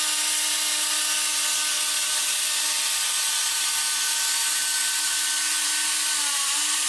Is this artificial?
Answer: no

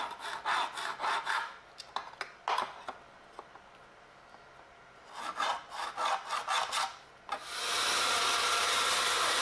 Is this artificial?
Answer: no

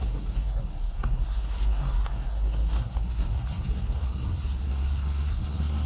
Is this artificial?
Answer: yes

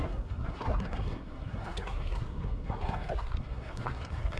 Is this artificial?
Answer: yes